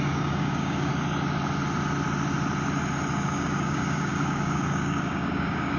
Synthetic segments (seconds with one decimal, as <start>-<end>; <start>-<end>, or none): 0.0-0.9; 3.1-5.8